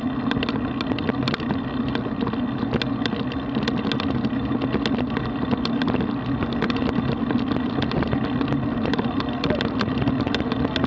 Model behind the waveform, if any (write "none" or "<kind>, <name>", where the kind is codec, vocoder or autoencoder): none